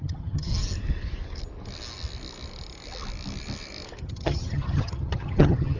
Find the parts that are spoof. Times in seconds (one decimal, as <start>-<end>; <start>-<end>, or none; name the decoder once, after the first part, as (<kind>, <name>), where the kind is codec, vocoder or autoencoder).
0.0-0.5 (vocoder, HiFi-GAN); 4.0-5.8